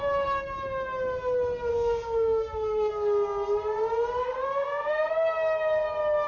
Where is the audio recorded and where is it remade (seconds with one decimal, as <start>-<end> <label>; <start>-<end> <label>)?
0.0-1.7 recorded; 1.7-2.9 remade; 2.9-4.2 recorded; 4.2-5.1 remade; 5.1-6.3 recorded